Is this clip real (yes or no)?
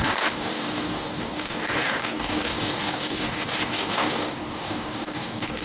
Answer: no